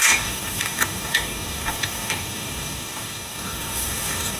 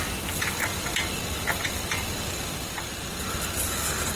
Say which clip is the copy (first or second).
first